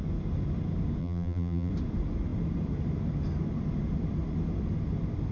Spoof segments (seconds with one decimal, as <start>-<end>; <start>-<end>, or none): 1.0-1.7